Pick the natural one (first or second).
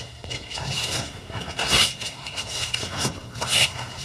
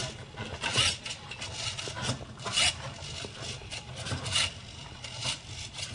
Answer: second